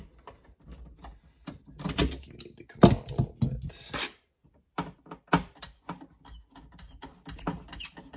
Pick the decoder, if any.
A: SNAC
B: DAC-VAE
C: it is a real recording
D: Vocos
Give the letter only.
C